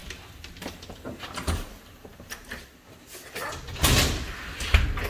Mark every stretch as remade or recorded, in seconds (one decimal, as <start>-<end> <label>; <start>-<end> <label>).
0.0-1.7 remade; 1.7-5.1 recorded